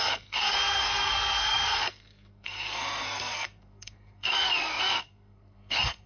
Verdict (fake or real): fake